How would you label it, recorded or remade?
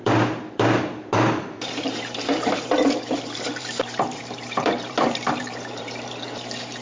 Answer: remade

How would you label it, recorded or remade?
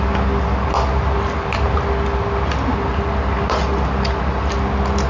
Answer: recorded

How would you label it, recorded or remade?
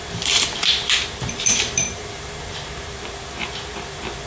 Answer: remade